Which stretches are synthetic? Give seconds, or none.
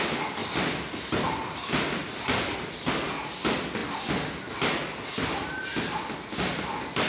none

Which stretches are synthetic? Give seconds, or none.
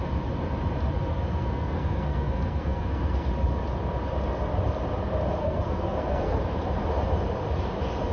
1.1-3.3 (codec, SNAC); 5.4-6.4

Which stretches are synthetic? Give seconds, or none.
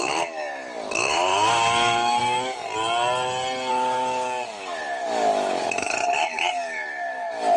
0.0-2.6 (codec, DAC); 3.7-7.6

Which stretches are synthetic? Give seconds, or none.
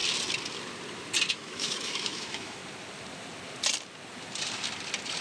1.3-2.6 (autoencoder, DAC-VAE)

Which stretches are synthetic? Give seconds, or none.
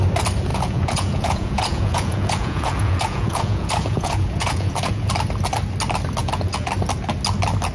0.5-5.1 (vocoder, Vocos); 6.2-6.7